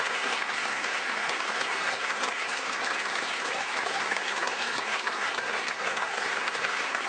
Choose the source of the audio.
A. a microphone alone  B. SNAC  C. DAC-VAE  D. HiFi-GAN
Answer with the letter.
B